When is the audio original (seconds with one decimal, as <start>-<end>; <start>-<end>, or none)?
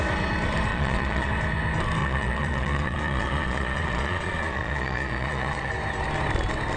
0.0-0.7; 1.3-2.0; 5.7-6.8